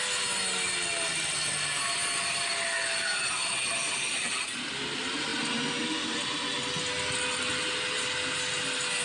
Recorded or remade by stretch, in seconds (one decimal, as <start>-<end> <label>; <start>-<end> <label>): 0.0-9.0 recorded

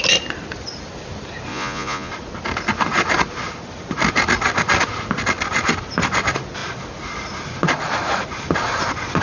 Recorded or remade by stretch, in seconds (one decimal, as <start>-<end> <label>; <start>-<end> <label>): 0.0-1.5 recorded; 1.5-2.1 remade; 2.1-9.2 recorded

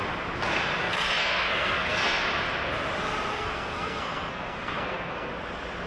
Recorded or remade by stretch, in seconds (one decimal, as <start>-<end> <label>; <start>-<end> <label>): 0.0-0.8 recorded; 0.8-2.2 remade; 2.2-3.3 recorded; 3.3-5.3 remade; 5.3-5.9 recorded

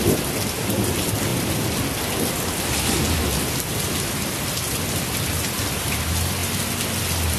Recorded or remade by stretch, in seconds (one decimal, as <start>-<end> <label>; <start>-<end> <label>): 0.0-7.4 recorded

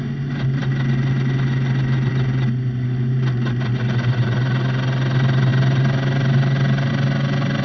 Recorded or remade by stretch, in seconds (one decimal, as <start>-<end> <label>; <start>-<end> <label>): 0.0-7.6 recorded

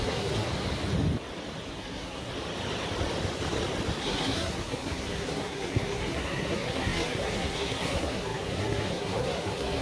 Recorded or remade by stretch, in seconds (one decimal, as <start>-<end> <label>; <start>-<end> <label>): 0.0-0.5 remade; 0.5-1.7 recorded; 1.7-2.3 remade; 2.3-4.0 recorded; 4.0-9.8 remade